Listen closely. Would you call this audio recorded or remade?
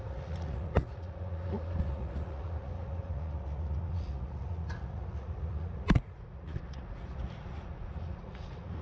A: remade